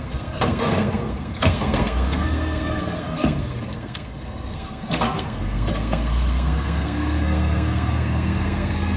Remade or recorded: remade